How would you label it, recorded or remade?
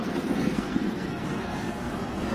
remade